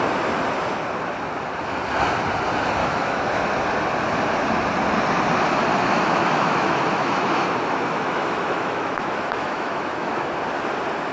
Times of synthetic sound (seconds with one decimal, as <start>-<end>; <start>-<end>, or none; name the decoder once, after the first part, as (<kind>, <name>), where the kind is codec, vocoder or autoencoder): 2.8-3.4 (autoencoder, DAC-VAE); 5.7-10.3